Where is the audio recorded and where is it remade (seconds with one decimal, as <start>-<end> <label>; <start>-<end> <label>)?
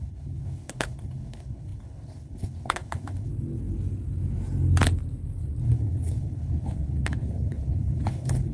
0.0-3.3 remade; 3.3-5.6 recorded; 5.6-8.5 remade